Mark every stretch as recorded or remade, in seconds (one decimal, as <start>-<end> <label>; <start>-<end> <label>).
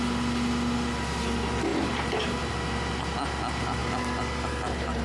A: 0.0-5.0 recorded